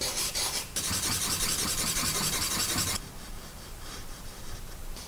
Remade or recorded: remade